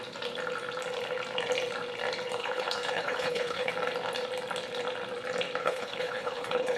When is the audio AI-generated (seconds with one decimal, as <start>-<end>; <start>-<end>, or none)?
2.4-3.7; 5.6-6.8

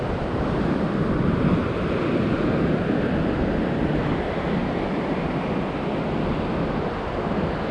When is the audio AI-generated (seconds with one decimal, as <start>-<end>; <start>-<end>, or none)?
none

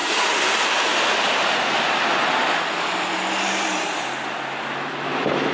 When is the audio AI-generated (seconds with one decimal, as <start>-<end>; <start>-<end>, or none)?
none

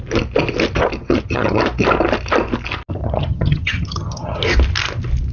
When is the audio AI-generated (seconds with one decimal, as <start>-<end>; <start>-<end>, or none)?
1.0-1.6; 3.0-4.4

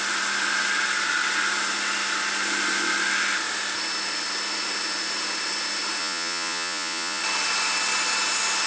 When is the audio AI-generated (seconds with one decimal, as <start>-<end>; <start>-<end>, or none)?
6.0-7.2